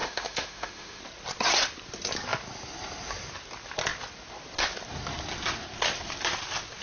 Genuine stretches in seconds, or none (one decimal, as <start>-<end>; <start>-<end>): 1.0-6.8

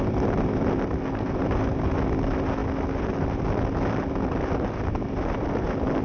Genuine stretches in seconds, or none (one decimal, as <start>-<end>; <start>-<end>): 0.0-6.0

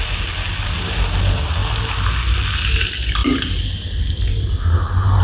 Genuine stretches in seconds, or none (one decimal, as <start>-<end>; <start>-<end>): 0.0-1.6; 2.2-3.2; 4.5-5.2

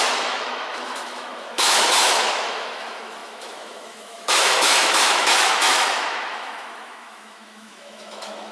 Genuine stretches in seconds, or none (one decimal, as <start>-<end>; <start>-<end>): none

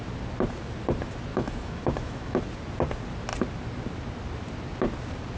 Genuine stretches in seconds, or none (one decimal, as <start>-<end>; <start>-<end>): 0.0-1.3; 2.4-5.4

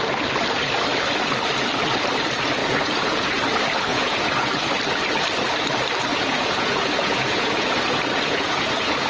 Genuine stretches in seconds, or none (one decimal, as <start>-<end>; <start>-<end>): 0.0-2.6; 3.3-3.9; 4.5-6.1